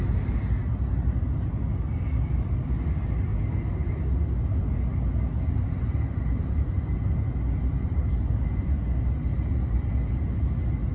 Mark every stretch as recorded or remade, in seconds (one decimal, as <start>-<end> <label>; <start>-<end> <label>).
0.0-10.9 recorded